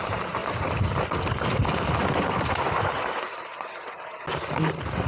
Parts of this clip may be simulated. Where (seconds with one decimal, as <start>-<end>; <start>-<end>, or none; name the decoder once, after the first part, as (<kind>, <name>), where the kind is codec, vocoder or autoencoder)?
none